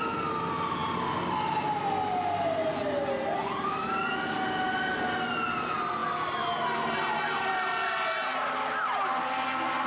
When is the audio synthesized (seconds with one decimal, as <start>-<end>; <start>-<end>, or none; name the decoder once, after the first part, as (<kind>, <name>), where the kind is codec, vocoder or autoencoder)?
none